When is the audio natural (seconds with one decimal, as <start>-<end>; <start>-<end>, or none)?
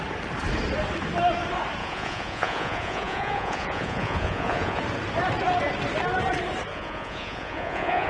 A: 0.0-1.8; 4.8-6.7